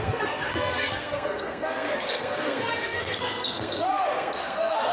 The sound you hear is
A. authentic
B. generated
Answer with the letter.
B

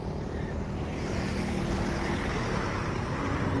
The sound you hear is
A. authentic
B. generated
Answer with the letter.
A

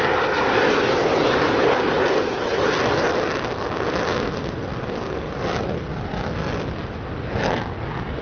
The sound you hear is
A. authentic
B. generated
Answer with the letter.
A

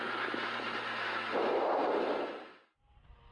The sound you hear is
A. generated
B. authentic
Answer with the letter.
B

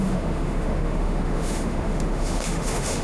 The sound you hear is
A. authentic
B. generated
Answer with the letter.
B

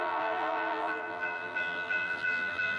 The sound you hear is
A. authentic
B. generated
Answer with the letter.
B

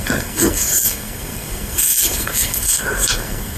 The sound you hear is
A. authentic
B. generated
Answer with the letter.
B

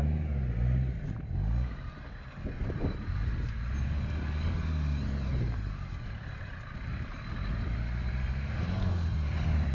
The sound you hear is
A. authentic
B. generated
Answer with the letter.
A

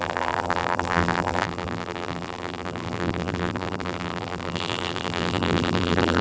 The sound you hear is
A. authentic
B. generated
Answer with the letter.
B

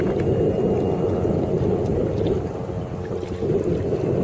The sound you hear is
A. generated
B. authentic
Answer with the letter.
B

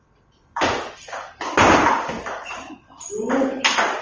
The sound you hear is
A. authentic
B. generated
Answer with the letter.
A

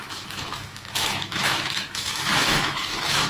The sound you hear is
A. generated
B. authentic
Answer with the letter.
A